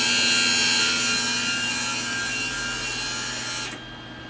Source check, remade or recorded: recorded